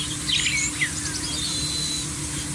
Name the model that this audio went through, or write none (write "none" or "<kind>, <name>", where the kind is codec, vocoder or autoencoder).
none